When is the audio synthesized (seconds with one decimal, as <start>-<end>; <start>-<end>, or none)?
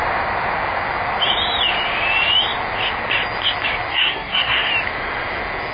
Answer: 3.9-4.7